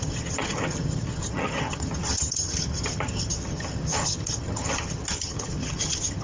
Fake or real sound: fake